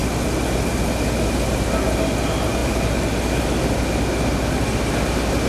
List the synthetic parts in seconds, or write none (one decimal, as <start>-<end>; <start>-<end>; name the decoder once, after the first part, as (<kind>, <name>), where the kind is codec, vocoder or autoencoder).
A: none